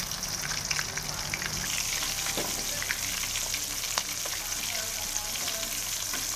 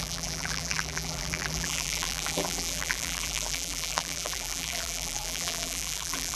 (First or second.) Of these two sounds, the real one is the first